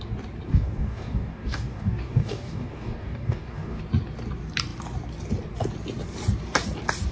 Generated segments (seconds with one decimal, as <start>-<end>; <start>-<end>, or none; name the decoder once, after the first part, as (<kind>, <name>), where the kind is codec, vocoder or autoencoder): 0.5-3.8 (codec, DAC)